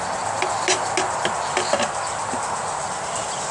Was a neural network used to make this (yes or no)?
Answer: no